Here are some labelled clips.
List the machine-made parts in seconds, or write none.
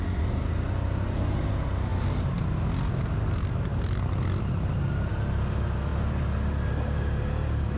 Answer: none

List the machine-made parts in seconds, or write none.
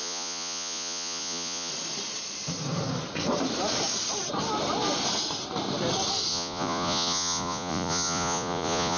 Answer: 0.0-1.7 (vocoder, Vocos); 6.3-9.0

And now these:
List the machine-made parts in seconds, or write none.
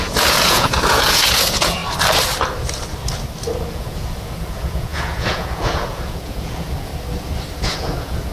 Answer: 0.0-1.8 (vocoder, Vocos); 3.7-6.9; 7.6-8.3